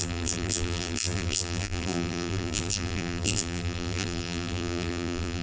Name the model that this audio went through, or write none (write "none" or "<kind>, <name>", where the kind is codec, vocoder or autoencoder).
vocoder, BigVGAN v2